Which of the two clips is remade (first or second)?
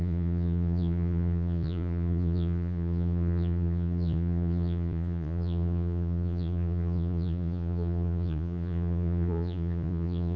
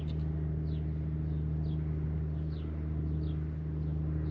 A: first